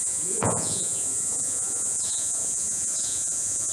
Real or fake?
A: fake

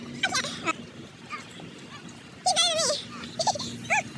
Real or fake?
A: real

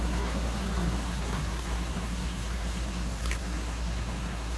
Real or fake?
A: fake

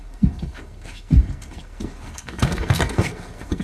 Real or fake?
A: fake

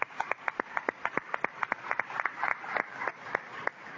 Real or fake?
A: fake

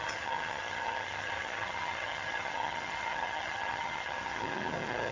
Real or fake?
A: fake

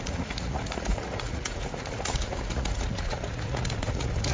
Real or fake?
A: fake